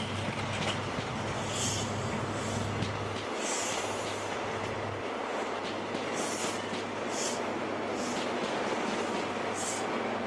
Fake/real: real